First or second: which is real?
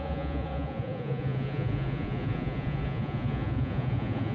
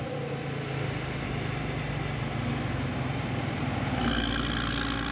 second